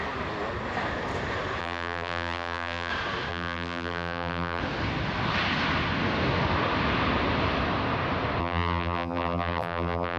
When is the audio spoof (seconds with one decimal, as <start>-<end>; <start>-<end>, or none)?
1.6-2.9; 3.3-4.6; 8.4-10.2